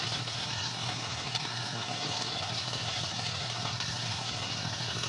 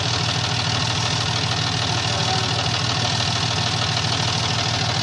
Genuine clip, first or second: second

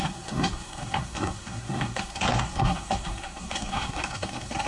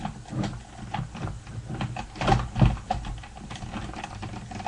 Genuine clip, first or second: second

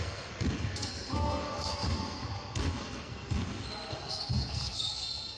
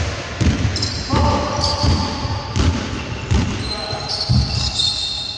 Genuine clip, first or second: second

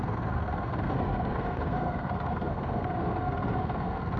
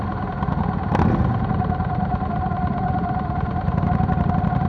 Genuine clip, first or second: second